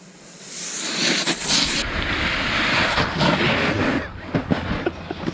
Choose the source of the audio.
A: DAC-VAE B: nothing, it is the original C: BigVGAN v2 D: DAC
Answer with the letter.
B